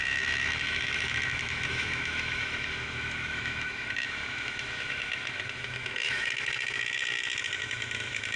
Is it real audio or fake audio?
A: fake